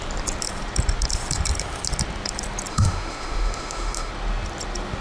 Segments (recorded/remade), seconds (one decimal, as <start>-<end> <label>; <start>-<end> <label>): 0.0-2.7 recorded; 2.7-4.1 remade; 4.1-5.0 recorded